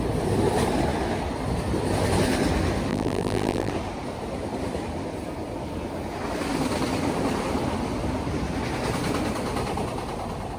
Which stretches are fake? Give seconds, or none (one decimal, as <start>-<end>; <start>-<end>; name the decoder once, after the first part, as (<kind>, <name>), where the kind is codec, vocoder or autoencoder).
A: 2.9-3.7 (vocoder, BigVGAN v2)